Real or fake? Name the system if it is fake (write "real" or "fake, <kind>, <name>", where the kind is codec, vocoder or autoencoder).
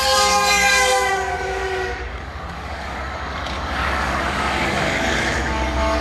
fake, codec, DAC